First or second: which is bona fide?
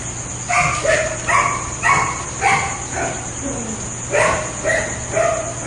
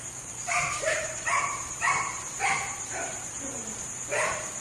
first